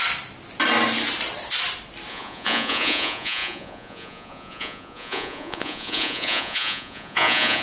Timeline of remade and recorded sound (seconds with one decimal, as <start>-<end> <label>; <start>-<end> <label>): 0.0-2.1 recorded; 2.1-7.6 remade